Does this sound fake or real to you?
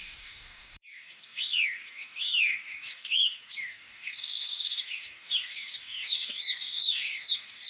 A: fake